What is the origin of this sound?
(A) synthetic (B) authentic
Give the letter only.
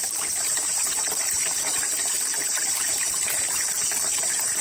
A